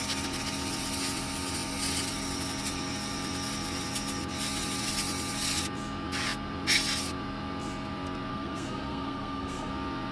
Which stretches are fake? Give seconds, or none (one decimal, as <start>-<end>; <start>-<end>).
8.3-9.7